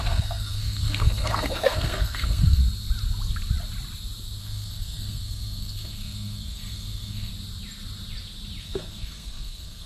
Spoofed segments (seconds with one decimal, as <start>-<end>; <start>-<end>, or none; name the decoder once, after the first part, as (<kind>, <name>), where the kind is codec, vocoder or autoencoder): 0.0-2.6 (codec, SNAC); 4.4-7.3; 8.6-9.9